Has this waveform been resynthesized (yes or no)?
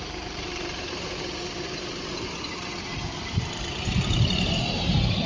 yes